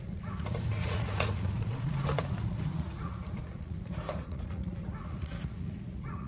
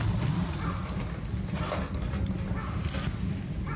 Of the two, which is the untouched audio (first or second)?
second